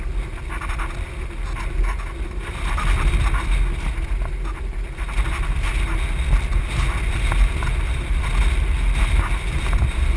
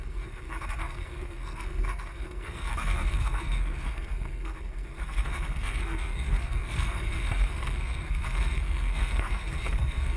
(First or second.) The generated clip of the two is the second